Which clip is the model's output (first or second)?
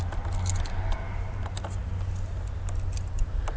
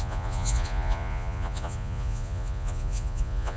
second